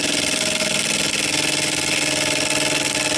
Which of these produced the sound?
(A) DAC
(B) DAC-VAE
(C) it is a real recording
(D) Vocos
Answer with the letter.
C